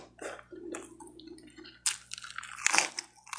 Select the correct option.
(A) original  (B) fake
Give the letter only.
A